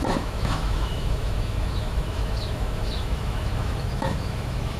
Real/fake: fake